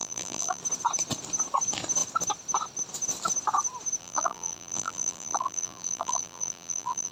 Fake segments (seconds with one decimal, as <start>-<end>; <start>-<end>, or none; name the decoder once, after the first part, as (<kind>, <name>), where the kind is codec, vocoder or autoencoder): 0.0-0.6 (vocoder, BigVGAN v2); 4.0-7.1